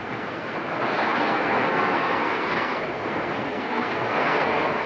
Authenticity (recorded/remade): remade